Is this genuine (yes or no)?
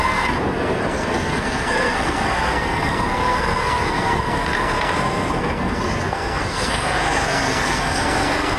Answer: no